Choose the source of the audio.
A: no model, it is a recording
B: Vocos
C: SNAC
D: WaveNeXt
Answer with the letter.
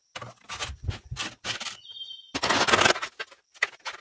A